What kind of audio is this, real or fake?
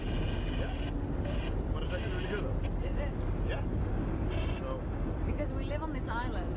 real